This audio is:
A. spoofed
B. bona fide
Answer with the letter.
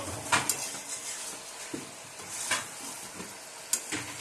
B